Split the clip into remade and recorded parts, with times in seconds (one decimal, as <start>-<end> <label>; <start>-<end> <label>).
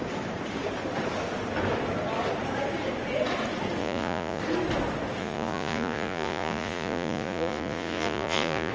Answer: 0.0-3.8 recorded; 3.8-4.4 remade; 4.4-5.2 recorded; 5.2-8.7 remade